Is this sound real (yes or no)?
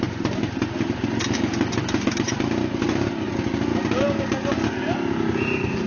yes